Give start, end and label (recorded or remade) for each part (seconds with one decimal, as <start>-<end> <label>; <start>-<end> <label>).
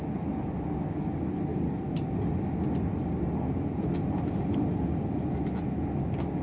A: 0.0-6.4 recorded